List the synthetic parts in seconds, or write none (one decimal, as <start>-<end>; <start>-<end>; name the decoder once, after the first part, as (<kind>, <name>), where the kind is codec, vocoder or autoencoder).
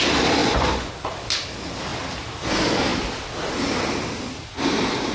0.4-0.9 (vocoder, Vocos)